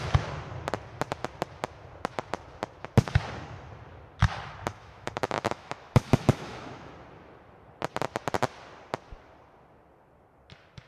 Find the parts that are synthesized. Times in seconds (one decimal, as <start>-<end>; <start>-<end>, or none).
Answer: 4.7-6.9